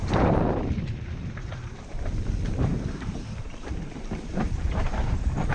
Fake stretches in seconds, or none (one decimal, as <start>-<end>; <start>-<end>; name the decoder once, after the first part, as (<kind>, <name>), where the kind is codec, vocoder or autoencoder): 0.0-5.5 (vocoder, BigVGAN v2)